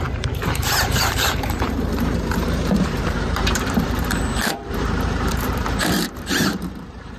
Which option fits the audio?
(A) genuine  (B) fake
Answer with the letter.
B